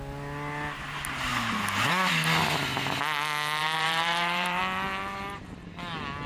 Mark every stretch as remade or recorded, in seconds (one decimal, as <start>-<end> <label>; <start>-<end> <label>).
0.0-3.6 recorded; 3.6-4.6 remade; 4.6-6.3 recorded

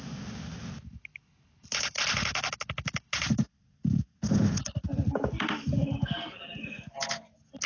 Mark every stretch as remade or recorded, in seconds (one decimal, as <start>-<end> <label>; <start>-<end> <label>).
0.0-7.7 recorded

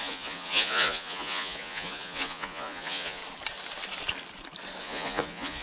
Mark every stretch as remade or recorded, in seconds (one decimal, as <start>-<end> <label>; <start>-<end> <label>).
0.0-3.2 remade; 3.2-4.8 recorded; 4.8-5.6 remade